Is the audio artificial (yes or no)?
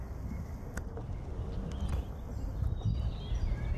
no